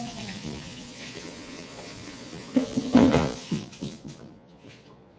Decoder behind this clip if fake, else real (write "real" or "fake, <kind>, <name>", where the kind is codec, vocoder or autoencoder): fake, vocoder, Vocos